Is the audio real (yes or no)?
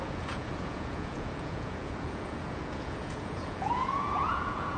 no